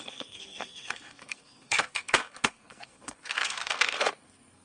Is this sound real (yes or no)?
no